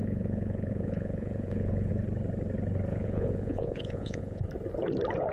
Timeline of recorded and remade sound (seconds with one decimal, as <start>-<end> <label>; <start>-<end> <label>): 0.0-1.9 remade; 1.9-2.9 recorded; 2.9-4.4 remade; 4.4-5.3 recorded